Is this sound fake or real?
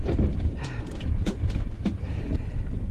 real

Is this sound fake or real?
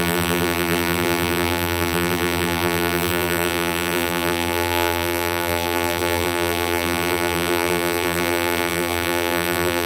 fake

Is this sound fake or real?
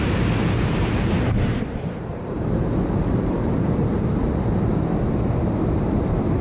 fake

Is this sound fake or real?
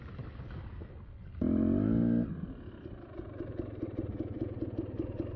real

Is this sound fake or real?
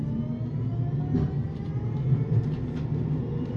real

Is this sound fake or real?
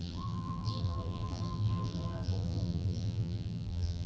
fake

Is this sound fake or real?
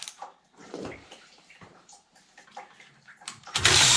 fake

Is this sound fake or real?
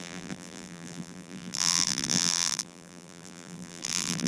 fake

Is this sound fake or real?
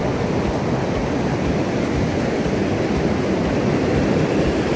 real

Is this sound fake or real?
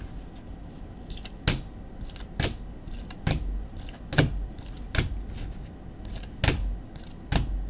real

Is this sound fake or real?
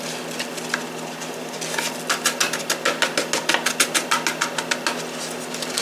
real